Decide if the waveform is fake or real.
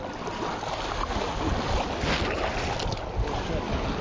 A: real